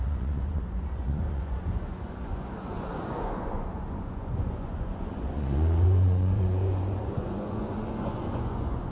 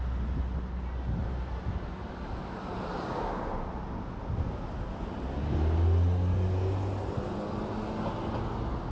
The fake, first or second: first